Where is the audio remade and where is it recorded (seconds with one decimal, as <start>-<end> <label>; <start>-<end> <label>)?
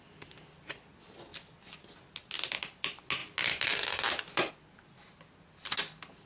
0.0-6.3 recorded